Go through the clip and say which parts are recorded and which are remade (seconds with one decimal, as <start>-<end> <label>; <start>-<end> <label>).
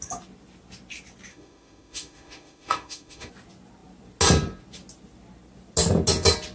0.0-1.3 recorded; 1.3-3.3 remade; 3.3-6.5 recorded